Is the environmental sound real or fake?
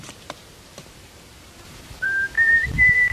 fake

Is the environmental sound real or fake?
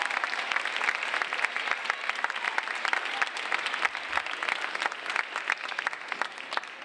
real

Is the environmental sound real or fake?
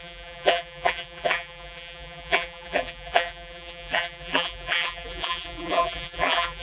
fake